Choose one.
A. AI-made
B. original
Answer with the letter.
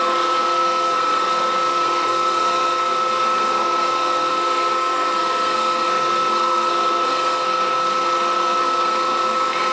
A